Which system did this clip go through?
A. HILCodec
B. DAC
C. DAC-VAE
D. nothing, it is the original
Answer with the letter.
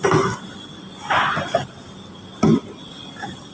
D